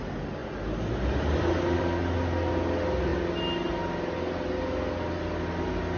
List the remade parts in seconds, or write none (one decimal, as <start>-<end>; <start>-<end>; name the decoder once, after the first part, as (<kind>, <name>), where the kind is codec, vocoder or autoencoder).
none